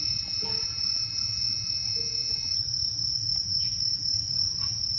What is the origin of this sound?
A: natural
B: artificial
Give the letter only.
A